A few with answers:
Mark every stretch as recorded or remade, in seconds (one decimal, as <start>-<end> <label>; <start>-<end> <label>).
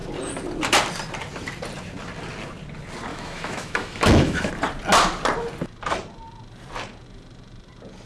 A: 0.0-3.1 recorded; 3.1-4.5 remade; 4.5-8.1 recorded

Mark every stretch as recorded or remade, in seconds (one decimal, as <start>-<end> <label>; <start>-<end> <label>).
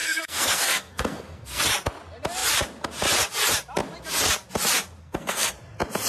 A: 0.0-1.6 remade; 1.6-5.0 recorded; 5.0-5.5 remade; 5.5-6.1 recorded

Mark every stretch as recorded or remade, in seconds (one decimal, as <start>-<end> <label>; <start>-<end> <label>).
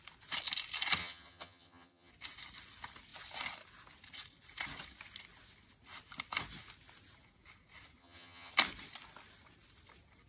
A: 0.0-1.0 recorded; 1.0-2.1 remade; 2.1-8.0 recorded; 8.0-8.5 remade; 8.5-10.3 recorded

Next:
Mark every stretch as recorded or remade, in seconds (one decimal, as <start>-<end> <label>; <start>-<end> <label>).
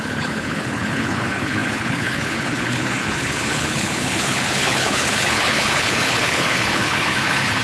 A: 0.0-7.6 remade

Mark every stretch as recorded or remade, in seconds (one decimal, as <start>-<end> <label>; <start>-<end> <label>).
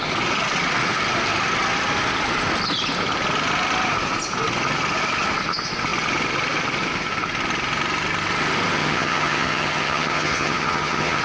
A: 0.0-8.8 recorded; 8.8-11.2 remade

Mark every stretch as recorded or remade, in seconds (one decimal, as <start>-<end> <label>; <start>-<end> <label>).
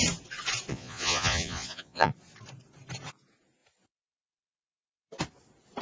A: 0.0-0.7 recorded; 0.7-2.1 remade; 2.1-5.8 recorded